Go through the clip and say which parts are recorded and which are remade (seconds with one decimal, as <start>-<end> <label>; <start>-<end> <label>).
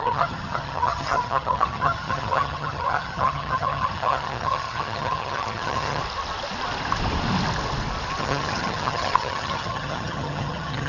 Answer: 0.0-6.0 remade; 6.0-8.2 recorded; 8.2-10.9 remade